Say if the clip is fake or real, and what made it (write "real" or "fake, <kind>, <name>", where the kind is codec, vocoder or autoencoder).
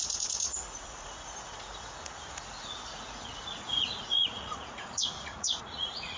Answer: fake, vocoder, Vocos